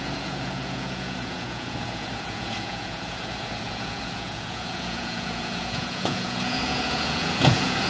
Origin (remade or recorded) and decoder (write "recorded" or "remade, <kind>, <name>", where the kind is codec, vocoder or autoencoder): remade, vocoder, Vocos